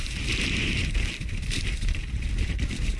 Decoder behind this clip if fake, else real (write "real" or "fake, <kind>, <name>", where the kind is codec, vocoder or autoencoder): fake, vocoder, BigVGAN v2